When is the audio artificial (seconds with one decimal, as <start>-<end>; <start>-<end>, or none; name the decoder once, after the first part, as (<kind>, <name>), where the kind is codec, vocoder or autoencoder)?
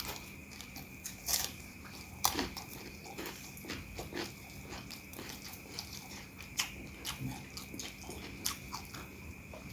0.4-3.3 (vocoder, BigVGAN v2); 5.1-6.7; 9.1-9.7